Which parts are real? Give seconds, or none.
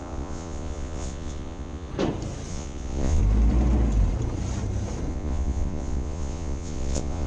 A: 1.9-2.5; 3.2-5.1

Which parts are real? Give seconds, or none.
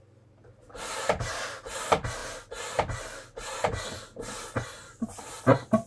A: 0.0-5.9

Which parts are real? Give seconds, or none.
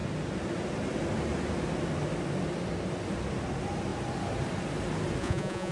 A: 0.0-5.2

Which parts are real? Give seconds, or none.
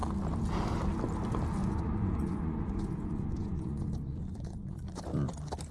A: 0.0-1.6; 5.0-5.7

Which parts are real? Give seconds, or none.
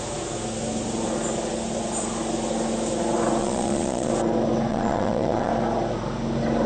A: 0.0-3.4; 4.1-4.7; 5.5-6.7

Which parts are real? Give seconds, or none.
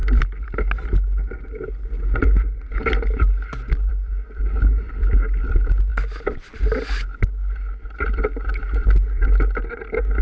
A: 0.0-10.2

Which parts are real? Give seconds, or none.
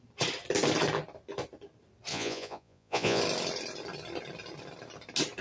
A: 0.0-2.1; 3.2-5.4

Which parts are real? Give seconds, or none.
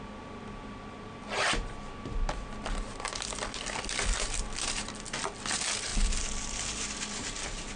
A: 0.0-7.8